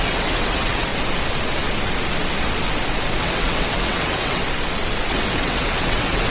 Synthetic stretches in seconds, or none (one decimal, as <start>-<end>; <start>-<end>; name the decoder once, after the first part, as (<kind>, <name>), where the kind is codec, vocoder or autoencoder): 0.0-0.9 (vocoder, WaveNeXt); 3.2-4.4; 5.1-6.3